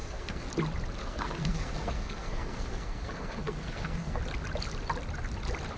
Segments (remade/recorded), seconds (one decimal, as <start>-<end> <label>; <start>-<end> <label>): 0.0-0.5 remade; 0.5-1.0 recorded; 1.0-4.2 remade; 4.2-5.8 recorded

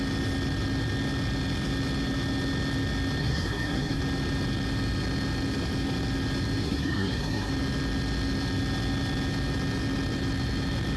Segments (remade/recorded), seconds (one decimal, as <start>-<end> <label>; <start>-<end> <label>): 0.0-3.2 recorded; 3.2-4.0 remade; 4.0-6.6 recorded; 6.6-7.5 remade; 7.5-11.0 recorded

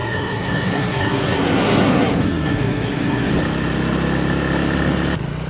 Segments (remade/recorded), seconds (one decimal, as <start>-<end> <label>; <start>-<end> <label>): 0.0-3.3 remade; 3.3-5.5 recorded

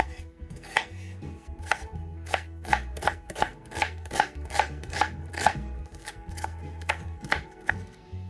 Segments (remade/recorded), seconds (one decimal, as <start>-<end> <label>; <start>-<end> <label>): 0.0-8.3 remade

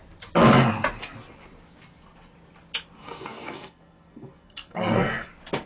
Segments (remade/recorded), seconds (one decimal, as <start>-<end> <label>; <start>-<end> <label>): 0.0-3.0 recorded; 3.0-5.3 remade; 5.3-5.7 recorded

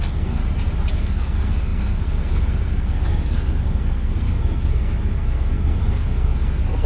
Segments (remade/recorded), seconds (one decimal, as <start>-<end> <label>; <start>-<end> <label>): 0.0-0.4 remade; 0.4-0.9 recorded; 0.9-6.9 remade